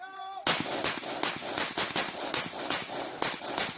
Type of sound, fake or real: real